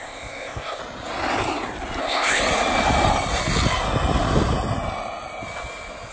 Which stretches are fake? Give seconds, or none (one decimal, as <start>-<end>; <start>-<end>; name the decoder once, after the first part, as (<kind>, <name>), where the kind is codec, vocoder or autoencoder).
0.0-0.8 (codec, ZipCodec); 2.0-2.4